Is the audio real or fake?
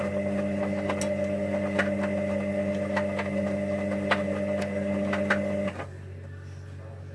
real